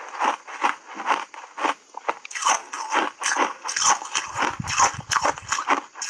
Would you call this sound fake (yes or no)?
no